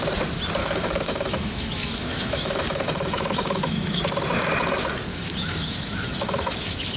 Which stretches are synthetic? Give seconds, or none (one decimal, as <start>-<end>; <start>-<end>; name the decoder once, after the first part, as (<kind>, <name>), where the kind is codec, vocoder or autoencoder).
0.6-4.0 (autoencoder, DAC-VAE); 5.1-7.0